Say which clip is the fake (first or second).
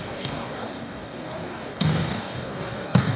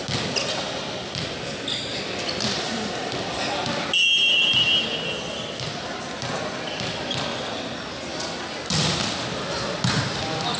first